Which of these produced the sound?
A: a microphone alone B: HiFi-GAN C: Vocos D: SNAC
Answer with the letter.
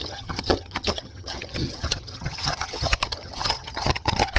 B